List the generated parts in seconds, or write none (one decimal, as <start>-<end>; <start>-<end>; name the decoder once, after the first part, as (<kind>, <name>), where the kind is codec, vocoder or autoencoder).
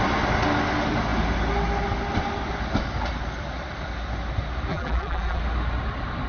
4.7-5.4 (vocoder, BigVGAN v2)